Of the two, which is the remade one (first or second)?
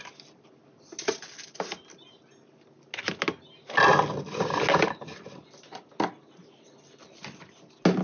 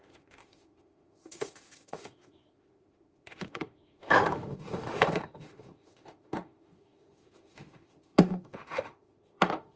second